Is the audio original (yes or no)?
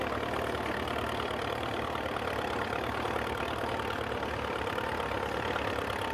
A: yes